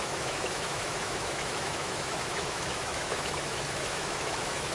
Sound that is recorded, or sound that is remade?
remade